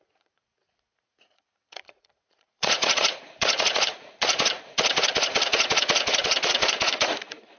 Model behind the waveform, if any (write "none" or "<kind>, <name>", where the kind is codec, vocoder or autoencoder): vocoder, Vocos